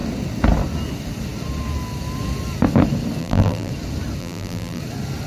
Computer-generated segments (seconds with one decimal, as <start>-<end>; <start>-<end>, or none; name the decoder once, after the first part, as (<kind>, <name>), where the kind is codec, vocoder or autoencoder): 3.2-3.7 (vocoder, BigVGAN v2); 4.2-4.8